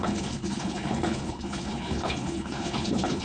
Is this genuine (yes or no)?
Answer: no